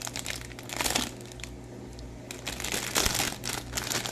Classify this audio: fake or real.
real